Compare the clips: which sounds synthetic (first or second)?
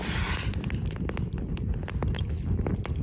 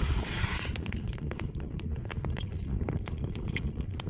second